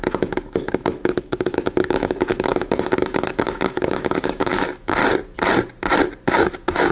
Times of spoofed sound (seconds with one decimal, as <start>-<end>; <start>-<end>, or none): 0.0-5.0; 6.3-6.9